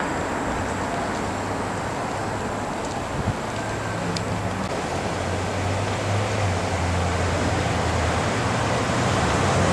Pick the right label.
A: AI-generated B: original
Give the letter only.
B